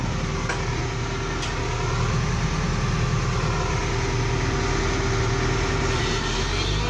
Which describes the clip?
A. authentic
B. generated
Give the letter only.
A